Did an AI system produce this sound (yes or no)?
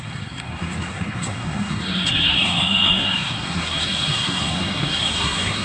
yes